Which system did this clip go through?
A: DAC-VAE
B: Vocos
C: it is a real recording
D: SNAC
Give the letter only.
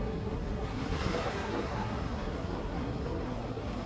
D